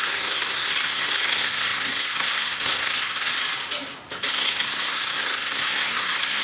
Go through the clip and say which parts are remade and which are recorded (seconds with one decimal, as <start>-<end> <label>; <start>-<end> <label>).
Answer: 0.0-3.3 remade; 3.3-4.3 recorded; 4.3-6.4 remade